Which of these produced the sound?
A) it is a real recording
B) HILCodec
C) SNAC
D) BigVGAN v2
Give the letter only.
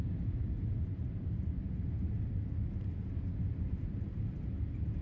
A